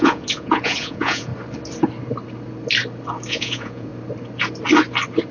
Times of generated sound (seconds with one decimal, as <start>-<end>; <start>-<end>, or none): 0.0-1.3; 3.3-3.9

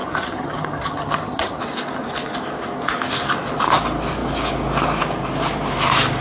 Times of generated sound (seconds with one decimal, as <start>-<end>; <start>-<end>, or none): 0.0-1.6

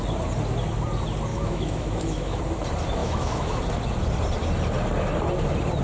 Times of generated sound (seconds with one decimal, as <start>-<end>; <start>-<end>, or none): 1.3-2.4; 3.0-3.6

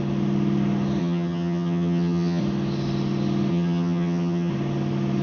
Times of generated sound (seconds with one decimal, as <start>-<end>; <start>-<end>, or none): 1.0-2.4; 3.5-4.5